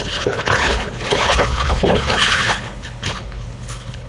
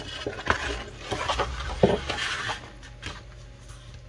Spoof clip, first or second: first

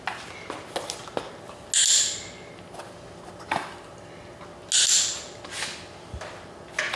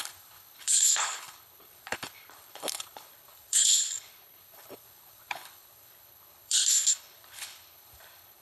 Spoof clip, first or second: second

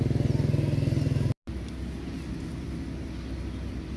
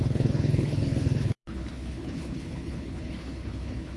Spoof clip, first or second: second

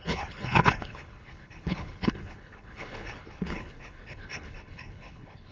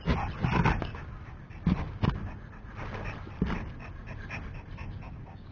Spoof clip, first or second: first